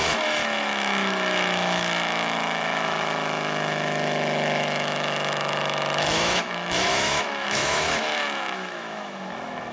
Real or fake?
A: fake